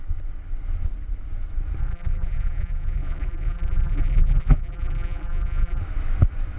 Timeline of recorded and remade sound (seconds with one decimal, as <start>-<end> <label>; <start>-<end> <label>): 0.0-1.8 recorded; 1.8-5.8 remade; 5.8-6.6 recorded